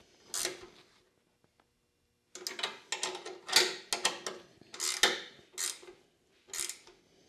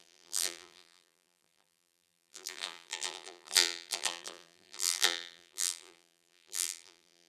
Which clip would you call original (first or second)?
first